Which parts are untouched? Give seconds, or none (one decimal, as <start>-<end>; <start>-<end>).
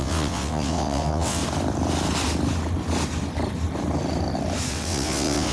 1.4-4.7